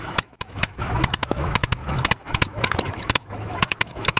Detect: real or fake fake